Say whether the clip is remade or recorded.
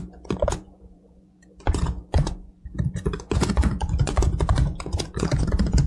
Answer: remade